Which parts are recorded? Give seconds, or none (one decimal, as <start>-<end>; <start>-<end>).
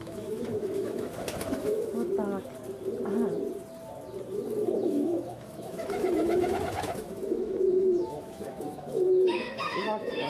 2.1-4.8